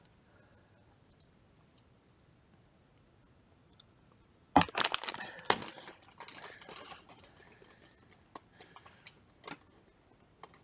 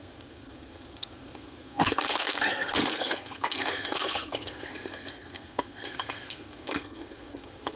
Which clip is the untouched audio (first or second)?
first